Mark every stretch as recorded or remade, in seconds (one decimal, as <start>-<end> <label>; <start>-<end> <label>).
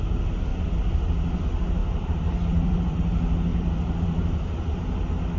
0.0-1.8 recorded; 1.8-3.0 remade; 3.0-3.5 recorded; 3.5-4.8 remade; 4.8-5.4 recorded